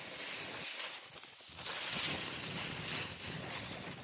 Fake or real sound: real